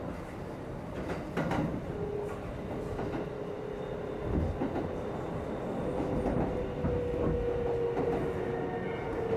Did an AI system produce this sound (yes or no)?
no